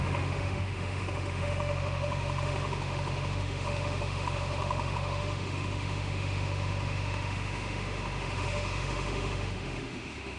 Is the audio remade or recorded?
remade